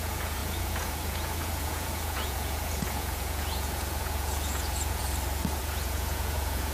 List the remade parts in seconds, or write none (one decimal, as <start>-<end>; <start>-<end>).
0.0-5.0; 5.6-6.7